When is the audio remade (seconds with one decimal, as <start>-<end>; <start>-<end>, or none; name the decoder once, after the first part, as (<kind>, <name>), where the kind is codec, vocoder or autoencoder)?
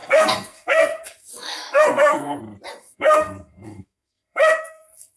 0.0-2.4 (codec, SNAC); 2.8-5.2